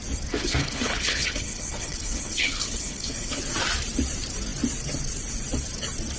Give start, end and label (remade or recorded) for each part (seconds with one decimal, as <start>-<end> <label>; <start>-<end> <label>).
0.0-0.4 recorded; 0.4-3.4 remade; 3.4-6.2 recorded